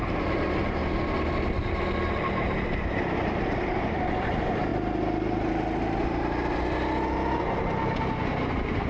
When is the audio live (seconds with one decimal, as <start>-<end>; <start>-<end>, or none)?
0.8-3.6; 4.7-8.2